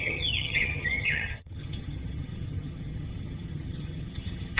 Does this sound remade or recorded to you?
remade